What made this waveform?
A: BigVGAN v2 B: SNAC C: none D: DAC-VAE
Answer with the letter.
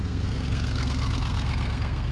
B